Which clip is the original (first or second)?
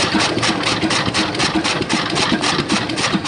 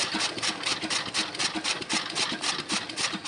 second